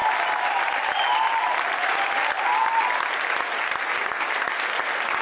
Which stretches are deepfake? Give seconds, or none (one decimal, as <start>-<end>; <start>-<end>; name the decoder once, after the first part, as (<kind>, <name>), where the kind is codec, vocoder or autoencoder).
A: none

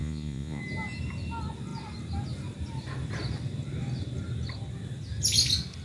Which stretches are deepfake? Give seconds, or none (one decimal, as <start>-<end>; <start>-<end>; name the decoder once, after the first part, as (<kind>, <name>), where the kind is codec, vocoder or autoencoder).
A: 0.0-0.6 (vocoder, Vocos)